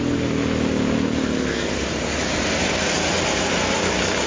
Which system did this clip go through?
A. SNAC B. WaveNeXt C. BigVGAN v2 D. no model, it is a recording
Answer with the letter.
D